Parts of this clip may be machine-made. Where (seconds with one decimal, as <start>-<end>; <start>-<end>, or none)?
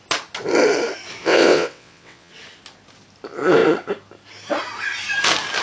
1.2-2.3